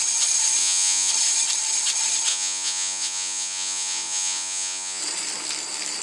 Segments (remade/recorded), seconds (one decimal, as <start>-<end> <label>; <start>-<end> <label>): 0.0-0.6 recorded; 0.6-1.1 remade; 1.1-2.3 recorded; 2.3-5.0 remade; 5.0-6.0 recorded